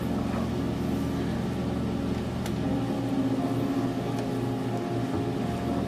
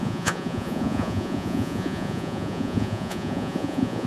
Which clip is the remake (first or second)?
second